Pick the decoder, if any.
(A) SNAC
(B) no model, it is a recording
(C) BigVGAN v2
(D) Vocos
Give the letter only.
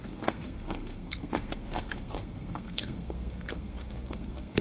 A